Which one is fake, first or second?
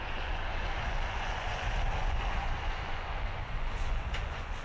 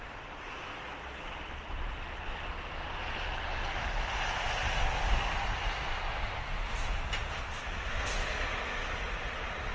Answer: first